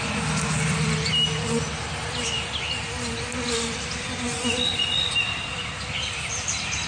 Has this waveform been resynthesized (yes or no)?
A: no